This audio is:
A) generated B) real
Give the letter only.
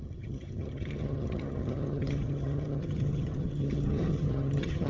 A